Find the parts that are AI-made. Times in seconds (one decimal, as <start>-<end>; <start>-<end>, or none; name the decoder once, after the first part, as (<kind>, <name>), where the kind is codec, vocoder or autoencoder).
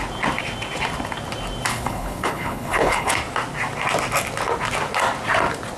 1.7-3.1 (codec, HILCodec)